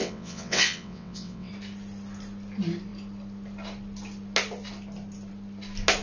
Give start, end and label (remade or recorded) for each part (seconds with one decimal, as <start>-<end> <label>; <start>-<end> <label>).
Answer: 0.0-1.5 remade; 1.5-6.0 recorded